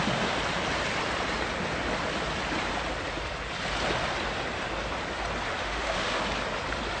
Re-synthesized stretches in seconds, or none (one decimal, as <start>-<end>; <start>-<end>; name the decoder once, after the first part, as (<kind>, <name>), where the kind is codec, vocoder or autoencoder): 5.6-6.2 (autoencoder, DAC-VAE)